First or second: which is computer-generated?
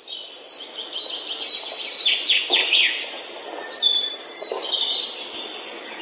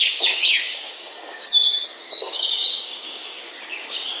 second